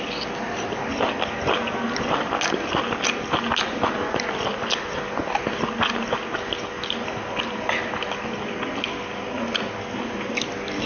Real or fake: real